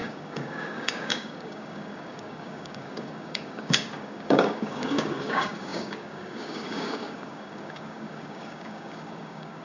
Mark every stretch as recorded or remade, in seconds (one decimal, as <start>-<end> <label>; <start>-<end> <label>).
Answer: 0.0-9.6 remade